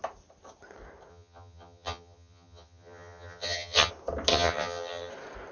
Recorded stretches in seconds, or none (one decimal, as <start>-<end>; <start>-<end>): 0.0-1.1; 3.9-4.3; 5.1-5.5